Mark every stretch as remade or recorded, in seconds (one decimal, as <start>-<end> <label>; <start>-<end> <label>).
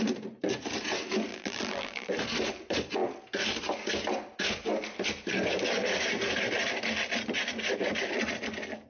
0.0-1.3 recorded; 1.3-2.1 remade; 2.1-8.9 recorded